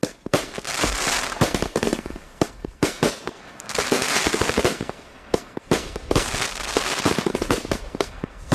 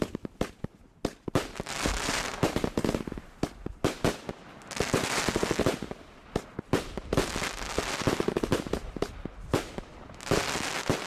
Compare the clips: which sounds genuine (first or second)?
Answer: second